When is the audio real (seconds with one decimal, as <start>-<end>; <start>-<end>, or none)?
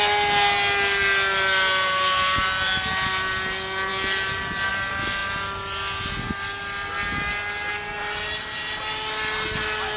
0.0-10.0